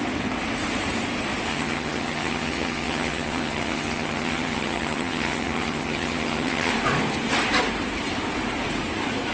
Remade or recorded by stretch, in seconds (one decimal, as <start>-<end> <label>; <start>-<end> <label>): 0.0-1.5 recorded; 1.5-6.7 remade; 6.7-9.3 recorded